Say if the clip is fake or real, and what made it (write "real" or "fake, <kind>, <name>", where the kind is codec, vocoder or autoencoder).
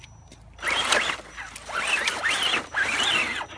real